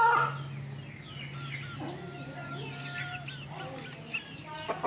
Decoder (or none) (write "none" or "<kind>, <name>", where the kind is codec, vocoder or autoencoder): none